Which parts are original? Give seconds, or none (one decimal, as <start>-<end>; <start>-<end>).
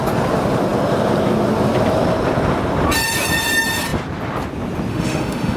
0.0-4.9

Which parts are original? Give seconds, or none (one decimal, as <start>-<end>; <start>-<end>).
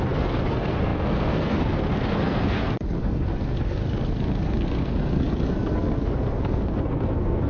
none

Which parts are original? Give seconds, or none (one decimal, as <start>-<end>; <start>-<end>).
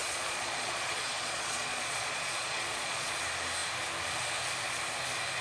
3.2-5.4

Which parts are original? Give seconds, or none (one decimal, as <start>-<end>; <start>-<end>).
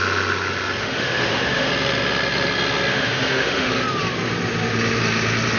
0.0-0.8; 1.7-2.9; 3.7-5.6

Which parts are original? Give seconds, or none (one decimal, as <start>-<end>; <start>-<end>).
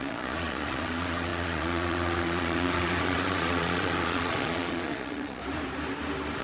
5.4-6.4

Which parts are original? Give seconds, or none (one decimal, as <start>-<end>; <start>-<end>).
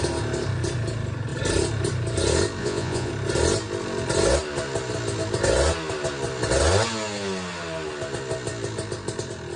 0.0-2.6; 3.1-9.6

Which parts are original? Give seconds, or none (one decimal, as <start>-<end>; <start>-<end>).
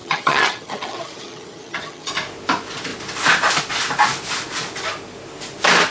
2.1-5.9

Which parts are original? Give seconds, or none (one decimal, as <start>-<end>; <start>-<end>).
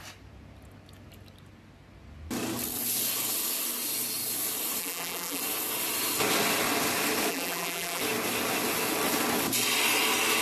0.0-4.8; 5.4-7.3; 8.0-10.4